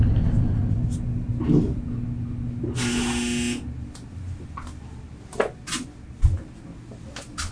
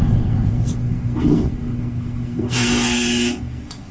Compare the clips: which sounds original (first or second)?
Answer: first